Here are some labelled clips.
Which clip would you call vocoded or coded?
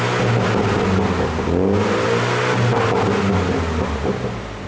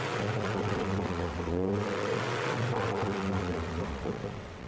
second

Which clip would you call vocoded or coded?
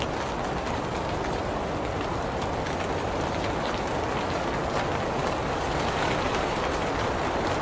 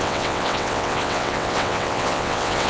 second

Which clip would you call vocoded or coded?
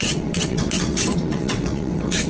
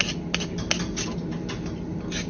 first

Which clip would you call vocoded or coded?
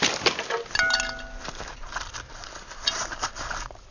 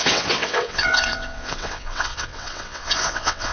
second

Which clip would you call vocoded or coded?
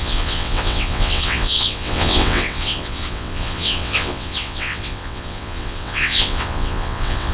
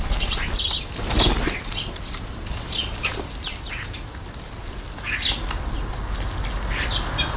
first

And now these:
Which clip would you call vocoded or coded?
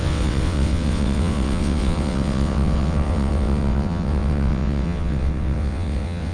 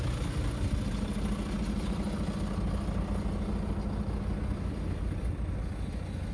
first